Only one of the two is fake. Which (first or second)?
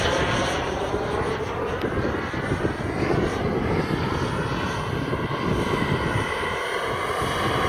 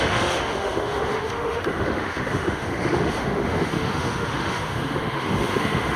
second